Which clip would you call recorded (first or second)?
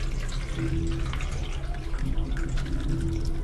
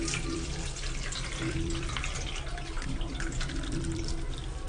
first